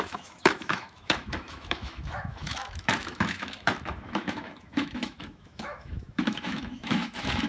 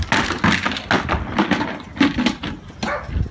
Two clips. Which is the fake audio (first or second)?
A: first